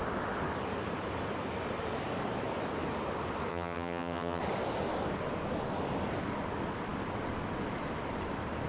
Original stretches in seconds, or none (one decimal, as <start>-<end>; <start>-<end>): 0.0-3.5; 4.4-8.7